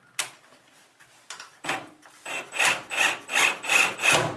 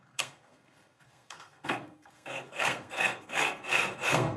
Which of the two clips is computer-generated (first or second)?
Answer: second